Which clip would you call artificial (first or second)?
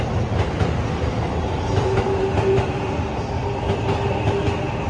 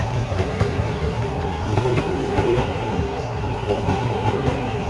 second